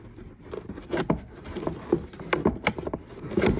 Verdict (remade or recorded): recorded